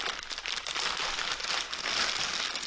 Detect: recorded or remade recorded